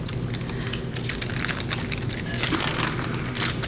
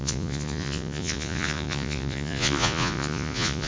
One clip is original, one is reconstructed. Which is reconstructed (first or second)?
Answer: second